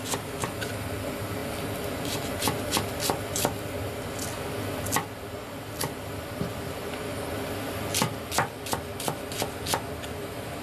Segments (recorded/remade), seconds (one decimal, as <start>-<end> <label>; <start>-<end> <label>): 0.0-10.6 recorded